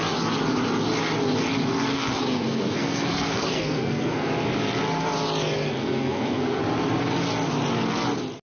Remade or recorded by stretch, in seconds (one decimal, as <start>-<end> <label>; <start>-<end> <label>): 0.0-1.9 recorded; 1.9-4.3 remade; 4.3-5.8 recorded; 5.8-6.6 remade; 6.6-8.4 recorded

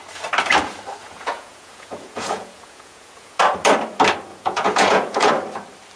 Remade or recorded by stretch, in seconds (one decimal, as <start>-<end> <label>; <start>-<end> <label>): 0.0-1.0 recorded; 1.0-3.4 remade; 3.4-4.3 recorded; 4.3-5.3 remade; 5.3-6.0 recorded

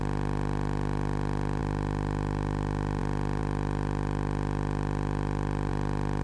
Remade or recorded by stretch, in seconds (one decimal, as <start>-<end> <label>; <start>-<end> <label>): 0.0-6.2 recorded

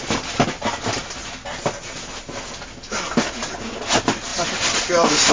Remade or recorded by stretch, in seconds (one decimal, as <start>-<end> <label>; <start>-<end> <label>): 0.0-5.3 recorded

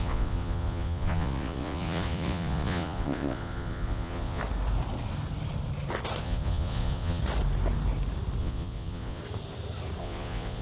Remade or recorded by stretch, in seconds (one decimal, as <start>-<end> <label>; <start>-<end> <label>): 0.0-4.4 remade; 4.4-6.2 recorded; 6.2-7.2 remade; 7.2-8.4 recorded; 8.4-9.2 remade; 9.2-10.0 recorded; 10.0-10.6 remade

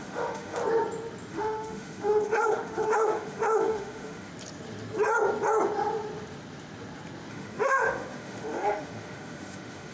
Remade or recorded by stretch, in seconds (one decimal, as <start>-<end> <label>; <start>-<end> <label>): 0.0-0.6 remade; 0.6-1.3 recorded; 1.3-4.3 remade; 4.3-7.3 recorded; 7.3-9.9 remade

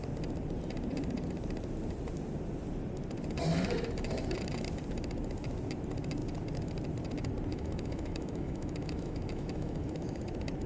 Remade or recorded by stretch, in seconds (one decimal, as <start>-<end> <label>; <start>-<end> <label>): 0.0-7.5 recorded; 7.5-10.2 remade; 10.2-10.7 recorded

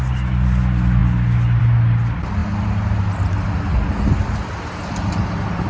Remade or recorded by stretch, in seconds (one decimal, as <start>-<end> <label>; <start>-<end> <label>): 0.0-5.7 recorded